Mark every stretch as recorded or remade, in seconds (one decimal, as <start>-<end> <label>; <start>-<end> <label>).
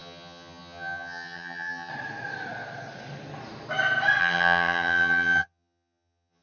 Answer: 0.0-1.9 remade; 1.9-4.2 recorded; 4.2-6.4 remade